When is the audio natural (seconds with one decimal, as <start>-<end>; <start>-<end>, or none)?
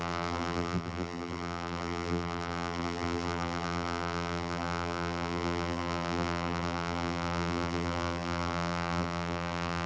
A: none